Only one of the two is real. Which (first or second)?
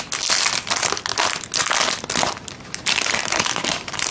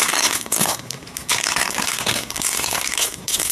first